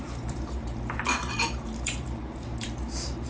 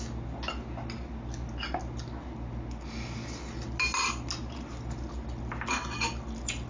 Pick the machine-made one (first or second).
first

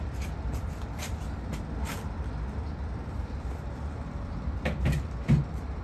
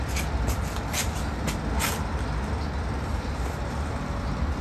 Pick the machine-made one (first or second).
first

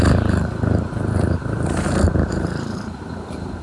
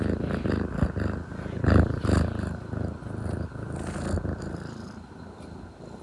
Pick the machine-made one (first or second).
first